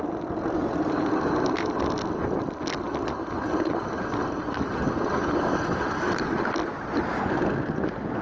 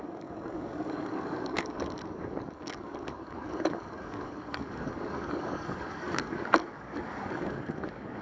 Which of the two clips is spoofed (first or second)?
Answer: second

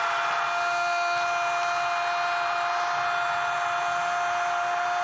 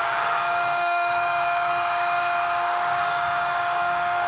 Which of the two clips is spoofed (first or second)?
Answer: second